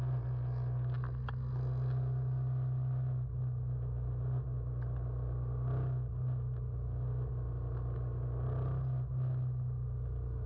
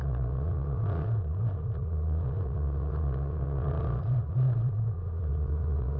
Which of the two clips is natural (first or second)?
first